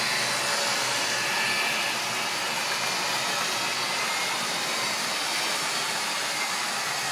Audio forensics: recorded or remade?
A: recorded